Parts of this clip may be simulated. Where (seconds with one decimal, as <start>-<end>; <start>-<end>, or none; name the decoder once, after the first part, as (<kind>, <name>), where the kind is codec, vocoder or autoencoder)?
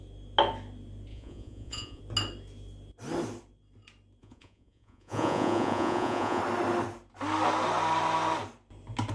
1.1-2.0 (vocoder, Vocos); 4.2-6.4